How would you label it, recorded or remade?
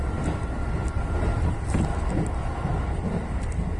recorded